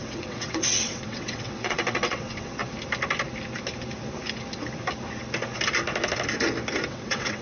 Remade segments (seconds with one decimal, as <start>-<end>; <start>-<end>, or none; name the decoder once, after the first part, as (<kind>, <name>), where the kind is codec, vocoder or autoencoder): 0.0-2.6 (vocoder, WaveNeXt); 6.9-7.4